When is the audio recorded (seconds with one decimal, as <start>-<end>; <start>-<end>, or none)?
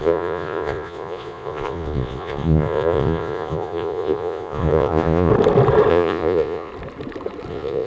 5.3-5.9; 6.7-7.5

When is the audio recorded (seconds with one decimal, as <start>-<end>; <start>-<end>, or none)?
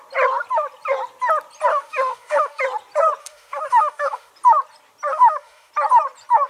0.0-1.7; 2.6-3.2; 4.3-5.1; 5.7-6.5